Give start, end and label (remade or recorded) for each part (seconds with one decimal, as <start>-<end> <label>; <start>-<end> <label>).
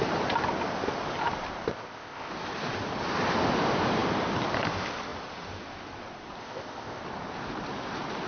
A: 0.0-1.7 recorded; 1.7-2.3 remade; 2.3-6.4 recorded; 6.4-7.0 remade; 7.0-8.3 recorded